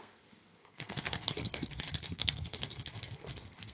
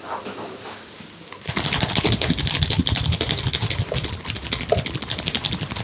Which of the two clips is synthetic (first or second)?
first